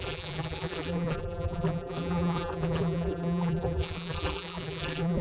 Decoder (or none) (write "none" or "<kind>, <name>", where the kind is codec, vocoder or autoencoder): vocoder, BigVGAN v2